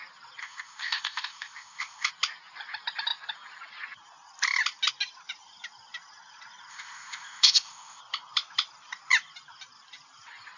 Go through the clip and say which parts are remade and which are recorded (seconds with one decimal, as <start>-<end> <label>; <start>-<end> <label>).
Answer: 0.0-0.4 recorded; 0.4-2.1 remade; 2.1-6.7 recorded; 6.7-8.0 remade; 8.0-10.6 recorded